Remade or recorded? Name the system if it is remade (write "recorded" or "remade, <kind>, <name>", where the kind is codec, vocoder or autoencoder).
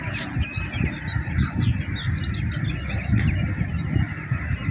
recorded